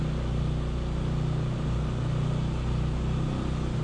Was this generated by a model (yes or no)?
no